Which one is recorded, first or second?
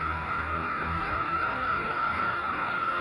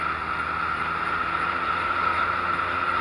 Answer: second